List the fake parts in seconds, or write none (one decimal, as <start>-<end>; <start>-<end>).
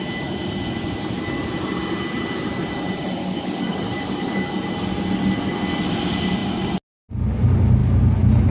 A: 3.2-4.5